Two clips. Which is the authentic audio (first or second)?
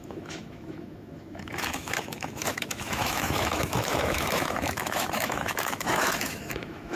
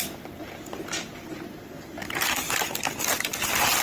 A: second